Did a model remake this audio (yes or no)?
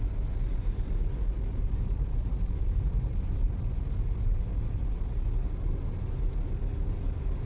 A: no